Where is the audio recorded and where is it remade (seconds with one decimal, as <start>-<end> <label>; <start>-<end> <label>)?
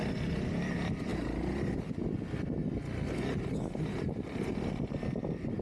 0.0-5.6 recorded